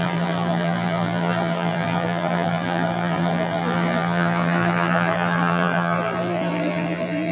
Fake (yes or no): yes